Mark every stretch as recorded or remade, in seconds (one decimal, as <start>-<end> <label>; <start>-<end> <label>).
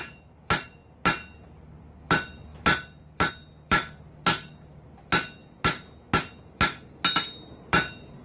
0.0-0.8 remade; 0.8-1.8 recorded; 1.8-5.4 remade; 5.4-6.4 recorded; 6.4-8.2 remade